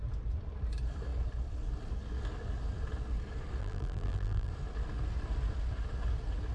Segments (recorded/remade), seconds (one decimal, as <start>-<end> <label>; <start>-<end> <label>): 0.0-3.6 recorded; 3.6-4.5 remade; 4.5-6.5 recorded